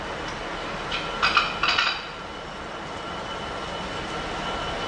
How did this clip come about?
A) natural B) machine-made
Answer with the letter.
A